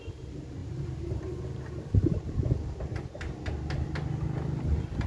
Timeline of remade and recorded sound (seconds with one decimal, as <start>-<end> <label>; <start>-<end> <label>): 0.0-0.6 recorded; 0.6-1.2 remade; 1.2-2.9 recorded; 2.9-3.5 remade; 3.5-5.1 recorded